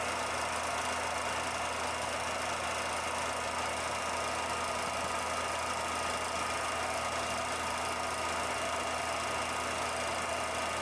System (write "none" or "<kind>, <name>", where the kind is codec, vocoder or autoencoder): none